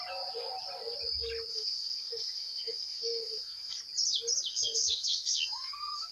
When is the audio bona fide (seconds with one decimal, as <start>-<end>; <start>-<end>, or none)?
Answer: 0.0-1.5; 3.8-4.5